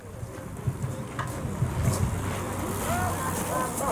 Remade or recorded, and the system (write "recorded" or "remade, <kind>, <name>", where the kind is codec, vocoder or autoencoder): recorded